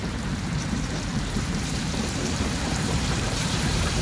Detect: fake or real fake